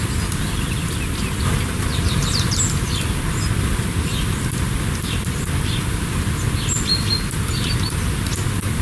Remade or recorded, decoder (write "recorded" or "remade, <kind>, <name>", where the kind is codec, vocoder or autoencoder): recorded